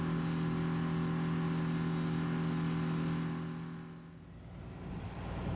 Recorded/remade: recorded